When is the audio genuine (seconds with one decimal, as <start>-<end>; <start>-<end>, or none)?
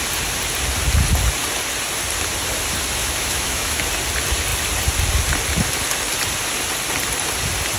0.0-3.0; 3.9-7.8